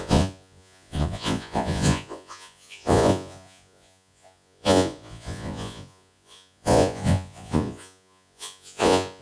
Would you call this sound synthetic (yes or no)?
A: yes